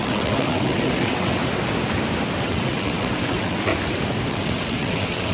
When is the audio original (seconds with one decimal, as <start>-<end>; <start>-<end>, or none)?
1.4-2.4; 3.7-4.3